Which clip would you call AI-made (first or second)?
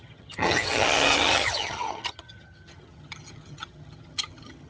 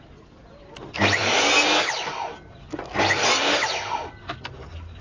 first